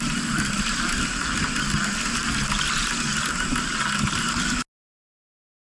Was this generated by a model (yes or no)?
no